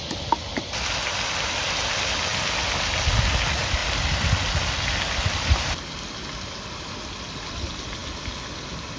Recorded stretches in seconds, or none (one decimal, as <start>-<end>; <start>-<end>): 0.0-9.0